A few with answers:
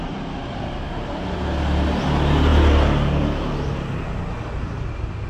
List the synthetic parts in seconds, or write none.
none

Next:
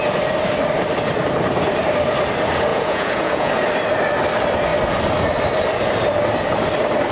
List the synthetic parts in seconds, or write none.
2.7-3.5 (vocoder, Vocos)

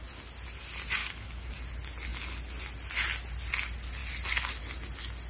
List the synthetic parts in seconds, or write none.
1.0-1.5 (autoencoder, DAC-VAE)

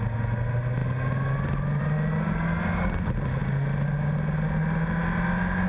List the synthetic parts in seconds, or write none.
none

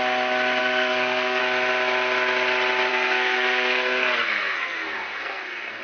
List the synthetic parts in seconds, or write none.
0.6-1.4 (codec, SNAC); 2.9-5.8

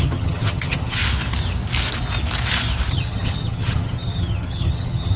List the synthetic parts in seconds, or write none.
0.0-1.0 (vocoder, HiFi-GAN); 2.9-5.2